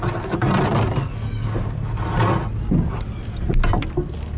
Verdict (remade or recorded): recorded